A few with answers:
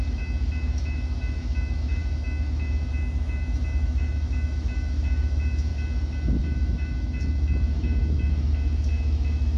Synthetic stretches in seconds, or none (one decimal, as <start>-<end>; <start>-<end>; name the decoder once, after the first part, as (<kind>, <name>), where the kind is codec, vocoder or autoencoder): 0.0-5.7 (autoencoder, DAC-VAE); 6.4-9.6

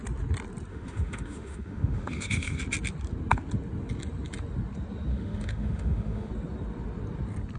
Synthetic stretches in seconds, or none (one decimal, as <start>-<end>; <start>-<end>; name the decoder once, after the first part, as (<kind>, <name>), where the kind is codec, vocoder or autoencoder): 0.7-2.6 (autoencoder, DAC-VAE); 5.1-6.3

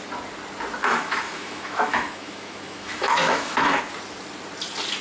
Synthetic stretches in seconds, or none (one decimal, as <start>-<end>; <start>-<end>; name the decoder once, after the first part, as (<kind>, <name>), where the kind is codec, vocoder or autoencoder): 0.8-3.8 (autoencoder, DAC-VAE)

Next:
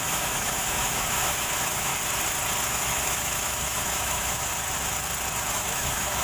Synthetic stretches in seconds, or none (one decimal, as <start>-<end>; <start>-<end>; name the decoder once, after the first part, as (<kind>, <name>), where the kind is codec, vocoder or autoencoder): 0.0-1.9 (autoencoder, DAC-VAE); 2.7-4.5; 5.5-6.2

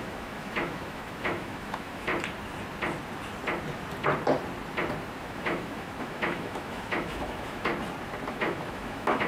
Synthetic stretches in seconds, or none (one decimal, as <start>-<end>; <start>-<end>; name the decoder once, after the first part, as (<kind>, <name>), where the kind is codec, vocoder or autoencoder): 0.0-2.1 (autoencoder, DAC-VAE); 5.2-7.7; 8.3-9.3

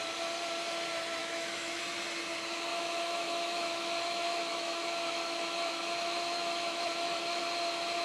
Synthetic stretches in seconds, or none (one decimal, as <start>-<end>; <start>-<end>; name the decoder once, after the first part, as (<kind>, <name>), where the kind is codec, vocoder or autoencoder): 1.2-1.8 (autoencoder, DAC-VAE); 2.7-7.4

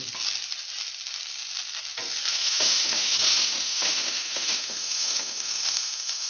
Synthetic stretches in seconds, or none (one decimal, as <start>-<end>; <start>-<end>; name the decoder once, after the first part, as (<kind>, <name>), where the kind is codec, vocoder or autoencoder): 2.3-6.3 (autoencoder, DAC-VAE)